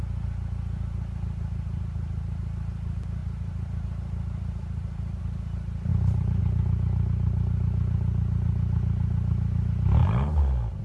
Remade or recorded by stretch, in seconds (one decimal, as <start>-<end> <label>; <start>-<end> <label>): 0.0-3.2 recorded; 3.2-5.2 remade; 5.2-5.9 recorded; 5.9-6.4 remade; 6.4-10.8 recorded